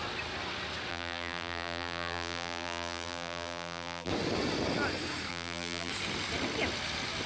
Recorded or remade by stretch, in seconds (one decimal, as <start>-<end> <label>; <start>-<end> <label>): 0.0-0.9 recorded; 0.9-4.1 remade; 4.1-5.3 recorded; 5.3-5.9 remade; 5.9-7.3 recorded